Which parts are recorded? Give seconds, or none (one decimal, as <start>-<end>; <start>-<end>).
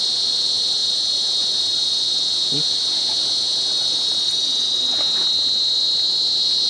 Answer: 0.0-6.7